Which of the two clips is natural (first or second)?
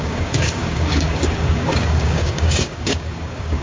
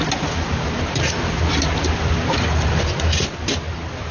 second